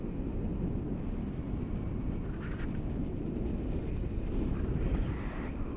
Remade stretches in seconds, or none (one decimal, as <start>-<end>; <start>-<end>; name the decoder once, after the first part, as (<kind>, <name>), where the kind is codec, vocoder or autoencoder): none

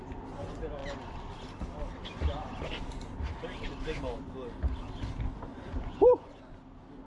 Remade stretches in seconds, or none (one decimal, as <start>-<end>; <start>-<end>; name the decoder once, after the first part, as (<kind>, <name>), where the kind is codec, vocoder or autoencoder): 5.5-6.4 (vocoder, Vocos)

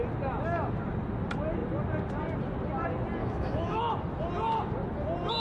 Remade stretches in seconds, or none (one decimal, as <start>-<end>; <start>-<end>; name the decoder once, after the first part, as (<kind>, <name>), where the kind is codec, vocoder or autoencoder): 3.2-3.8 (autoencoder, DAC-VAE)

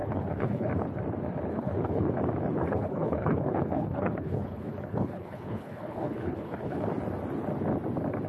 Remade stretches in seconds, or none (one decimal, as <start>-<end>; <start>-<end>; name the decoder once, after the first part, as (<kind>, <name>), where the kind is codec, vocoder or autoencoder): 0.0-0.7 (codec, HILCodec); 1.5-2.1; 2.6-6.9

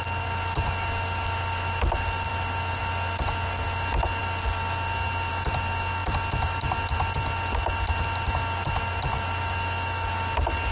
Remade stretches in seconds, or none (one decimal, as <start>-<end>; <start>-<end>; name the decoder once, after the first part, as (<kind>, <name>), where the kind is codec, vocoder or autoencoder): none

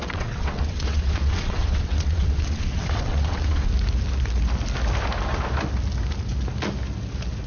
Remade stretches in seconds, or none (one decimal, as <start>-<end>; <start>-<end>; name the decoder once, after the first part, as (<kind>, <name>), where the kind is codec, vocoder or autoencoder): 0.0-3.7 (vocoder, WaveNeXt)